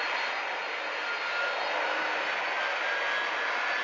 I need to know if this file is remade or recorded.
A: recorded